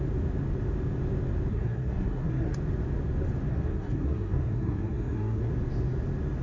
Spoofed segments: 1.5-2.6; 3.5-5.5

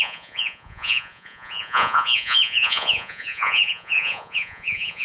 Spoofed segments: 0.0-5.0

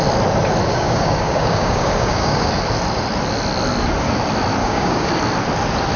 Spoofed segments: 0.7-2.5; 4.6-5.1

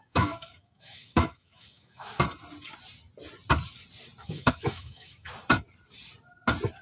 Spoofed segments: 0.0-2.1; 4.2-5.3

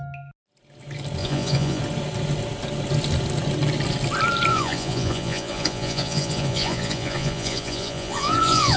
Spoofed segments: 1.2-1.8; 4.5-8.8

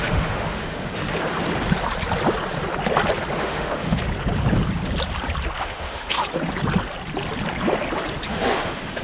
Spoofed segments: 0.0-1.0; 3.4-4.0; 5.6-6.2; 8.3-9.0

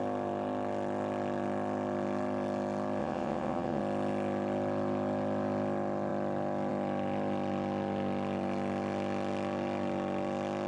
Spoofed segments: 3.0-3.8